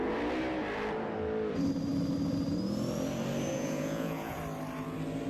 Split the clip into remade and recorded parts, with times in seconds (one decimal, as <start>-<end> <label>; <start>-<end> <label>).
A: 0.0-3.5 recorded; 3.5-4.4 remade; 4.4-5.3 recorded